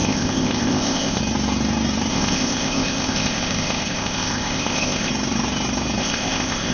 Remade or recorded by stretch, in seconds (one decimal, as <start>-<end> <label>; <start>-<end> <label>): 0.0-1.2 remade; 1.2-2.1 recorded; 2.1-5.1 remade; 5.1-6.0 recorded; 6.0-6.7 remade